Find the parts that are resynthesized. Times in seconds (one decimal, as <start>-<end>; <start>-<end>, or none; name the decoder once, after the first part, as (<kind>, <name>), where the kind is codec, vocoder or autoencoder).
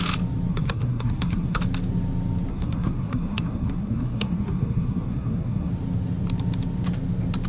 0.5-1.6 (codec, SNAC); 2.5-5.7